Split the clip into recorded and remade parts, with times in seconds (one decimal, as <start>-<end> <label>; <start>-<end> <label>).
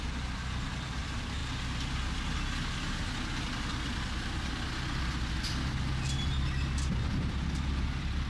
0.0-8.3 recorded